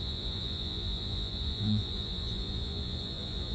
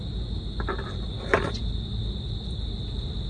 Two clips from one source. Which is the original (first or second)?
second